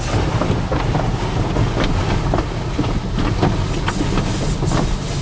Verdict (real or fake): real